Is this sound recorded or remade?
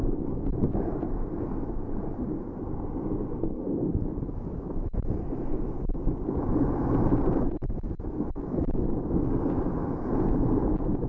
recorded